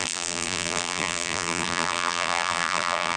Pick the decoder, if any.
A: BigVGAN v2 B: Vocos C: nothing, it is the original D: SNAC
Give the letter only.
A